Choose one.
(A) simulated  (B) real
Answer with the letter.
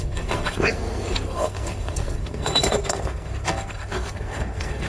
A